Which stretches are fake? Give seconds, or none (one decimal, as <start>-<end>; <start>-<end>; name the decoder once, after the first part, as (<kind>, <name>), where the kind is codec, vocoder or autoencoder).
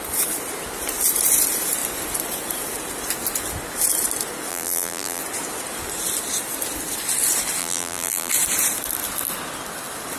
4.5-5.2 (vocoder, BigVGAN v2); 7.6-8.3